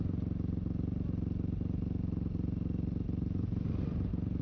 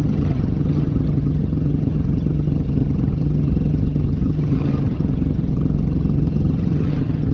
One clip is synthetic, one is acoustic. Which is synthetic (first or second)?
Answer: second